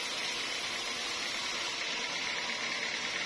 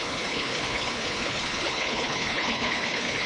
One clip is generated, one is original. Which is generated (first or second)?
second